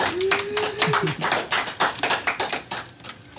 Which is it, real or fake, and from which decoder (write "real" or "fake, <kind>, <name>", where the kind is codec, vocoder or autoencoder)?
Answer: real